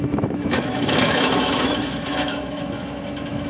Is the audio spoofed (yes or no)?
yes